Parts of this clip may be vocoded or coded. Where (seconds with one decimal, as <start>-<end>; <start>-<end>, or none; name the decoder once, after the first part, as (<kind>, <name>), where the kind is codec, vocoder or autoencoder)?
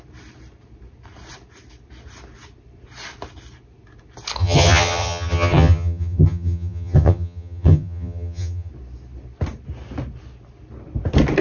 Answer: 4.4-8.7 (vocoder, HiFi-GAN)